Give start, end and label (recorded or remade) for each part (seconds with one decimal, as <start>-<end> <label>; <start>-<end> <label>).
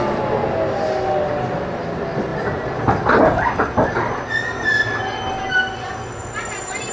0.0-6.9 recorded